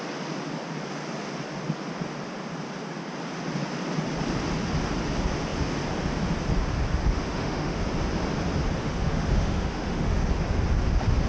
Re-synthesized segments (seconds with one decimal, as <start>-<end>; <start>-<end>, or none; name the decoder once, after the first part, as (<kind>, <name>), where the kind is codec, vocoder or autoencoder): 6.9-7.8 (autoencoder, DAC-VAE); 8.8-10.3